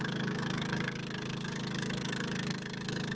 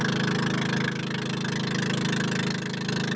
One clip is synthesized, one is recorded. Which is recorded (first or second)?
second